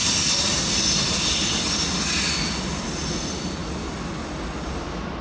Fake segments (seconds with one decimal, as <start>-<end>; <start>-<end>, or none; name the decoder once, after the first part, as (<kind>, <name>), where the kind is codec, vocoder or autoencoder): none